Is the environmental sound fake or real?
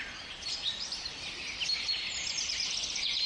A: fake